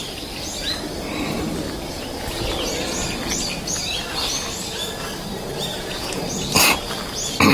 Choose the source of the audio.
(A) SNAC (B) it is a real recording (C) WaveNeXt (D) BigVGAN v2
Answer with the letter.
B